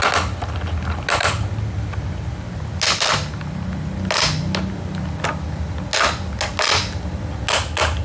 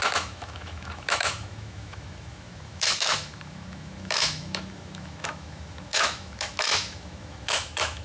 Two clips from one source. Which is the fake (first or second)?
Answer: second